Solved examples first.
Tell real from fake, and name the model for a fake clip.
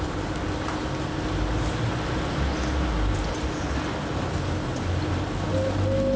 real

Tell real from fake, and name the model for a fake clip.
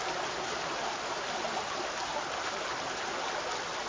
real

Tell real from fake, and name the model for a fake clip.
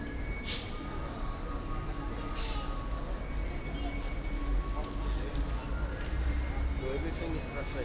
real